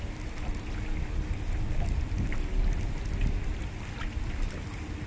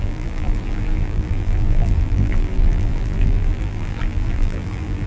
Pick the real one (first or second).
first